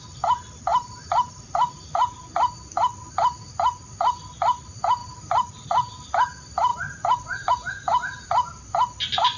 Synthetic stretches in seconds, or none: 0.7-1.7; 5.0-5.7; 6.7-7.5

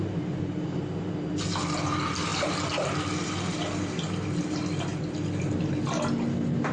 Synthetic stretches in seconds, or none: none

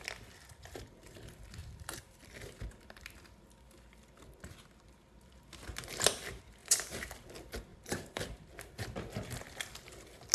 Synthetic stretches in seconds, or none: 1.6-2.4; 6.6-7.3; 7.7-8.5

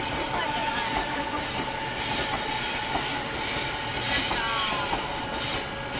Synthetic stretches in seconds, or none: none

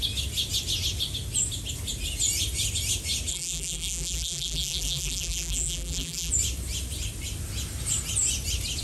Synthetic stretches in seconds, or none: 3.3-6.3

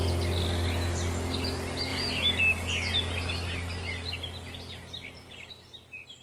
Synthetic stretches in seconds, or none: 1.9-2.4

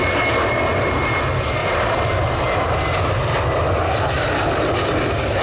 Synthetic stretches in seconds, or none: 1.6-2.1